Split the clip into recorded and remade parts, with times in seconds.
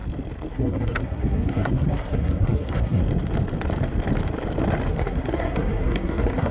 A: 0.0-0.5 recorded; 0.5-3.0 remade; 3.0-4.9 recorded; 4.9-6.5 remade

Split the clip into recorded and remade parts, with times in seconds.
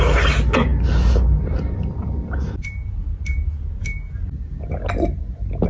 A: 0.0-5.7 recorded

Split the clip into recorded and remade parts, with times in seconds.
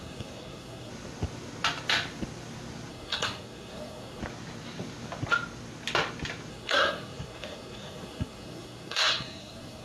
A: 0.0-0.9 remade; 0.9-2.9 recorded; 2.9-4.2 remade; 4.2-6.5 recorded; 6.5-9.8 remade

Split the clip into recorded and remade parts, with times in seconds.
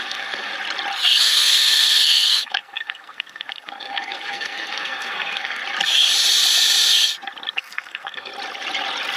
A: 0.0-0.5 remade; 0.5-1.2 recorded; 1.2-5.6 remade; 5.6-7.5 recorded; 7.5-8.3 remade; 8.3-9.2 recorded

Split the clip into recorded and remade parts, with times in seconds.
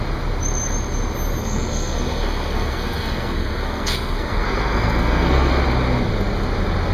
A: 0.0-1.4 recorded; 1.4-5.5 remade; 5.5-6.9 recorded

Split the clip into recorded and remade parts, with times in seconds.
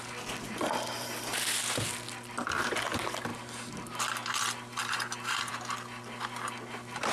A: 0.0-7.1 recorded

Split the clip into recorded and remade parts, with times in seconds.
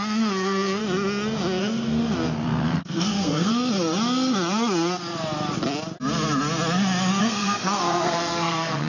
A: 0.0-0.8 remade; 0.8-1.6 recorded; 1.6-2.0 remade; 2.0-2.8 recorded; 2.8-3.5 remade; 3.5-7.2 recorded; 7.2-8.9 remade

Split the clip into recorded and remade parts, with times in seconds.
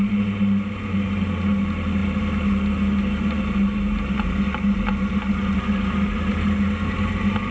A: 0.0-7.5 recorded